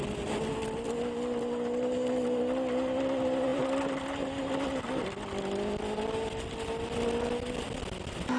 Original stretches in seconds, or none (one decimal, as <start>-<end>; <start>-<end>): 0.0-8.4